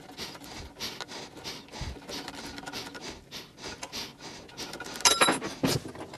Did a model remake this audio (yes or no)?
no